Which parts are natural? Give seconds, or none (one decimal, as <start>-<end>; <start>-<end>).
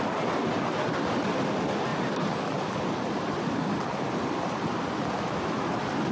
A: 0.0-1.9; 5.1-6.1